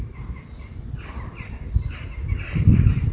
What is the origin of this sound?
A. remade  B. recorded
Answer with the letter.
B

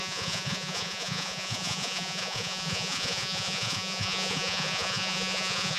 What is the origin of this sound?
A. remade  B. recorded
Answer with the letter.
A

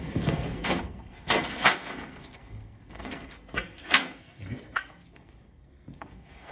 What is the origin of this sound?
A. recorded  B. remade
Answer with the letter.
B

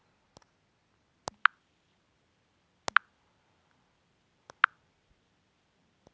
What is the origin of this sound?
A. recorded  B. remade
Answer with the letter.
A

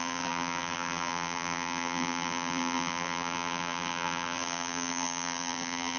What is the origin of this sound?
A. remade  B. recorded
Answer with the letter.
A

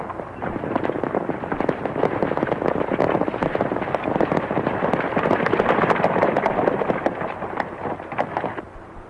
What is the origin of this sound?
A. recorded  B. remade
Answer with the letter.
A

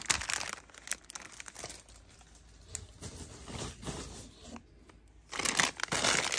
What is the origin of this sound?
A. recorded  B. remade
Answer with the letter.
A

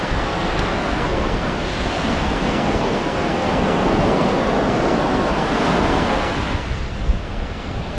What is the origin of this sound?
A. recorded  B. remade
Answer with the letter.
B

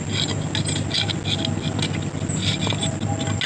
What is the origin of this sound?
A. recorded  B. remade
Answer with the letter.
A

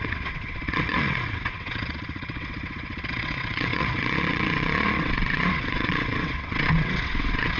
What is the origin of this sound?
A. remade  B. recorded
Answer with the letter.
A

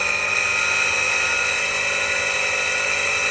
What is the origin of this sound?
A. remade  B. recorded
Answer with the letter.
B